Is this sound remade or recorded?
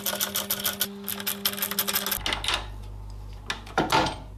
recorded